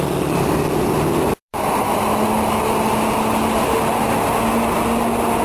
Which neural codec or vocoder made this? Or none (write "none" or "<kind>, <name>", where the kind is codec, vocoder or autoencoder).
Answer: vocoder, BigVGAN v2